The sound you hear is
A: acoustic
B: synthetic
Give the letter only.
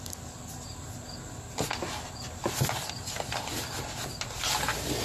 A